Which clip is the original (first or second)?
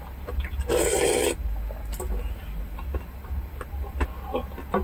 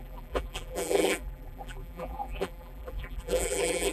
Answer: first